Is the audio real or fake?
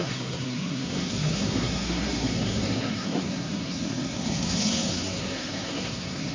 fake